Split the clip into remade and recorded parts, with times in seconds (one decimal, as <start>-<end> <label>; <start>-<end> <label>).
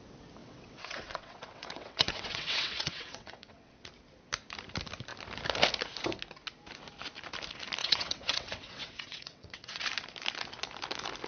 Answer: 0.0-0.4 recorded; 0.4-3.9 remade; 3.9-7.8 recorded; 7.8-9.8 remade; 9.8-11.3 recorded